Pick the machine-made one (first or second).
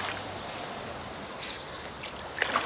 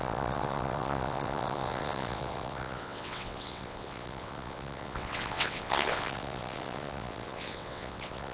second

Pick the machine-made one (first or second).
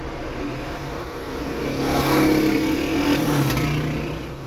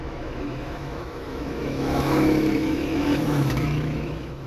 second